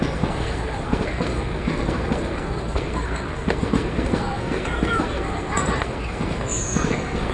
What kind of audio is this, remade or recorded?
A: remade